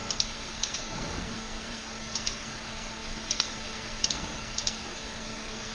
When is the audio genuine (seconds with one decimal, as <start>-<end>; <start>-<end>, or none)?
none